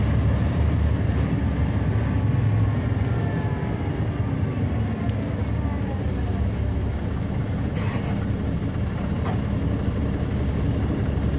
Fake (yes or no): no